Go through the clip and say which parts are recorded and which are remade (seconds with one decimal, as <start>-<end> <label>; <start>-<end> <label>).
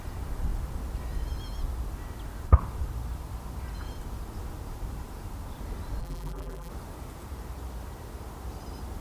0.0-6.0 recorded; 6.0-6.7 remade; 6.7-9.0 recorded